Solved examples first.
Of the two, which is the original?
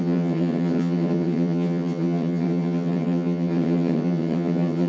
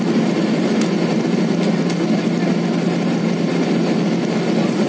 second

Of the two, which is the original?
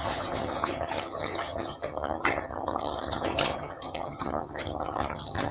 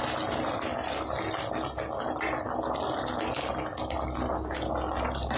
second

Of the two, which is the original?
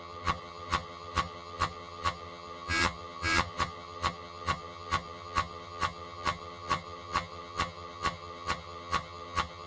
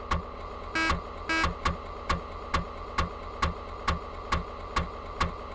second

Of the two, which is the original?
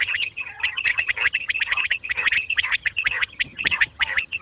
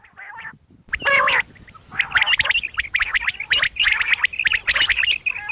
second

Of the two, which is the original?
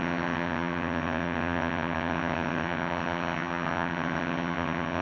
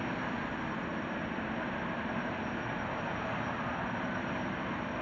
second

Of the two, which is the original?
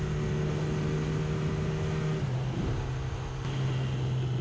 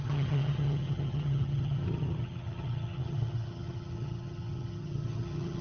first